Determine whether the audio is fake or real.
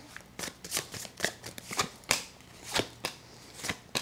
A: fake